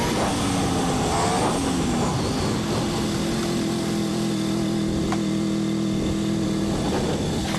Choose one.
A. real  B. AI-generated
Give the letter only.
A